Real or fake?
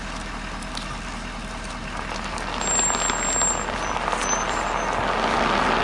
real